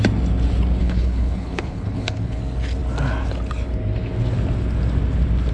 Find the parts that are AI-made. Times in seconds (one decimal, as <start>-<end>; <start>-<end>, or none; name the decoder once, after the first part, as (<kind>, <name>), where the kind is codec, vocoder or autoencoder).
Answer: 0.8-2.4 (codec, HILCodec)